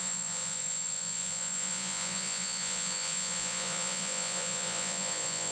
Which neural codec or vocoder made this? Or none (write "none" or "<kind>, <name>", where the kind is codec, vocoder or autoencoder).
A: vocoder, Vocos